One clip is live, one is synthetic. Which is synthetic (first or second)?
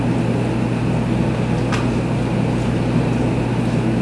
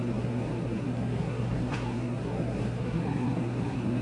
second